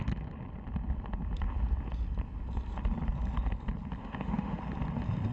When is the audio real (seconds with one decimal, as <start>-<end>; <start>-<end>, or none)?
0.0-4.0; 4.6-5.3